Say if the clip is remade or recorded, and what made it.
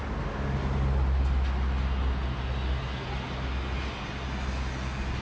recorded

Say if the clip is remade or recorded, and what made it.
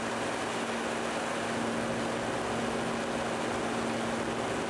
recorded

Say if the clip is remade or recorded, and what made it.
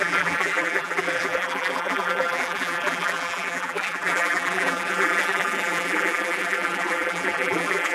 remade, vocoder, BigVGAN v2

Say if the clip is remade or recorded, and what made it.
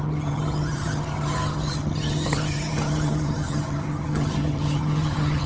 remade, vocoder, HiFi-GAN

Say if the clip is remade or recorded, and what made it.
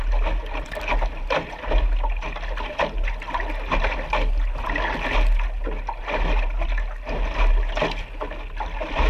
recorded